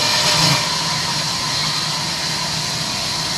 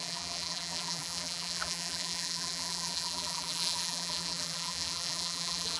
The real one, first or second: first